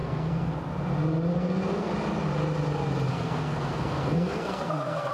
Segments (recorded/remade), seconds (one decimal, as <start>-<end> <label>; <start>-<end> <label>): 0.0-0.6 remade; 0.6-1.3 recorded; 1.3-1.9 remade; 1.9-3.1 recorded; 3.1-5.1 remade